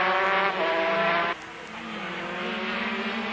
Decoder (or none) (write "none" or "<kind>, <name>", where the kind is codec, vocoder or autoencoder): none